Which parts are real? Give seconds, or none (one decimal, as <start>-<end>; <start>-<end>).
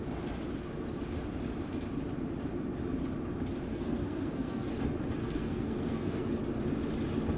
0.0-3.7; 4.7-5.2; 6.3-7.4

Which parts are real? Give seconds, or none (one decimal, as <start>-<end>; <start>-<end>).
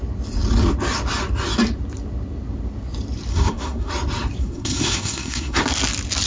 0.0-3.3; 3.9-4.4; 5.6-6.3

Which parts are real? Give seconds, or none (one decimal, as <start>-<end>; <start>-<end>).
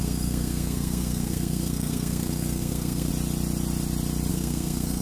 3.1-4.3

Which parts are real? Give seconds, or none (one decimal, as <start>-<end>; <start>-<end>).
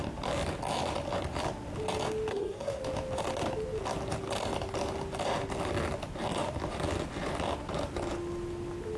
0.0-2.3; 2.8-9.0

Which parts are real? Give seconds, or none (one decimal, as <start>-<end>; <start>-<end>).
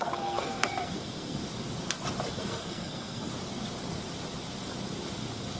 1.4-2.3; 3.3-5.6